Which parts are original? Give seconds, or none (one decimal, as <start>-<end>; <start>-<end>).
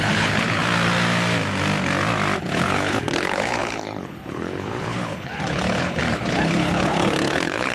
0.6-2.4